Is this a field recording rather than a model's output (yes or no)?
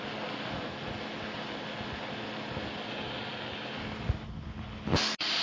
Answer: yes